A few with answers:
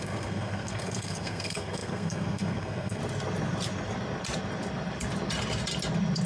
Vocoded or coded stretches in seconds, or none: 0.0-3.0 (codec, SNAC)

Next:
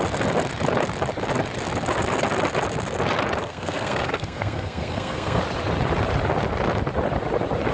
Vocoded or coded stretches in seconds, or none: 3.4-5.4 (codec, SNAC)